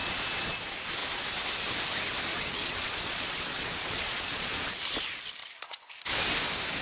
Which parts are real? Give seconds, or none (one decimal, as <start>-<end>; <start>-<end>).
0.6-2.3; 4.8-5.4; 6.0-6.8